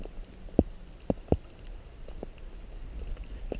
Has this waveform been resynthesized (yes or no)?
no